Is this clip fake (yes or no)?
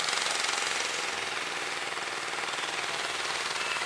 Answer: no